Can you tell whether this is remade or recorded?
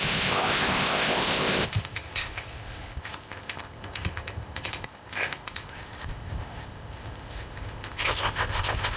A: remade